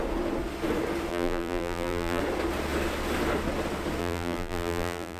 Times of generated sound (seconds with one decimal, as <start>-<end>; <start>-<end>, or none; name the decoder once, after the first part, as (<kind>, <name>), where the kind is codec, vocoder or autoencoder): 1.1-2.2 (vocoder, BigVGAN v2); 4.0-5.2